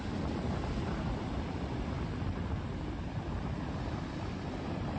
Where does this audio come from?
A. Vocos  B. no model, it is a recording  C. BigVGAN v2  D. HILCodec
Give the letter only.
B